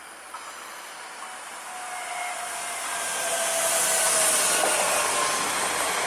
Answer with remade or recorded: recorded